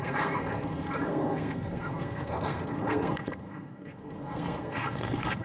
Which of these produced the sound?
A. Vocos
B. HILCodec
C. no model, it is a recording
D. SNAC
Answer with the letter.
D